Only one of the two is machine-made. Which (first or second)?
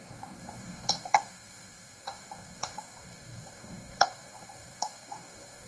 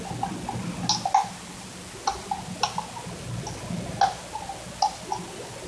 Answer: first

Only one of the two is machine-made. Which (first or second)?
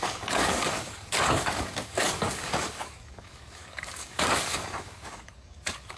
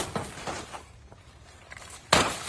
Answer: first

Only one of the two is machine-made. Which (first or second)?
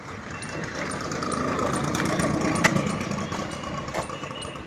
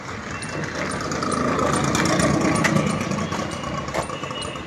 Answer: first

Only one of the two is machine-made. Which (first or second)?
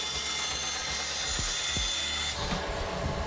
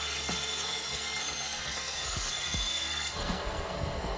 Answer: second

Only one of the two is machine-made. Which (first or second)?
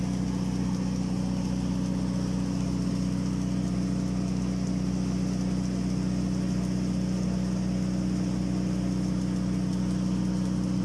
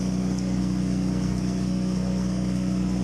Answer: second